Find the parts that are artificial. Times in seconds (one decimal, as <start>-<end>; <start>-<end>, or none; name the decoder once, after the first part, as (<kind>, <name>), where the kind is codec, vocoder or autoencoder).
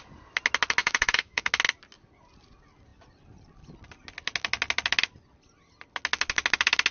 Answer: 0.8-1.5 (autoencoder, DAC-VAE)